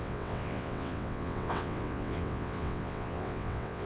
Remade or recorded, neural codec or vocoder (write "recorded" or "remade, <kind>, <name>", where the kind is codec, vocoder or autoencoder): remade, vocoder, WaveNeXt